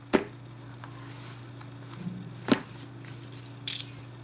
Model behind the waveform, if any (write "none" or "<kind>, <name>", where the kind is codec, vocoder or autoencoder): none